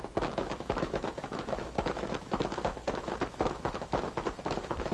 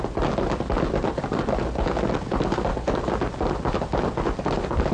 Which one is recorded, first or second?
second